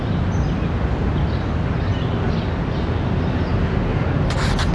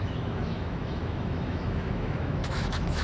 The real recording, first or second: first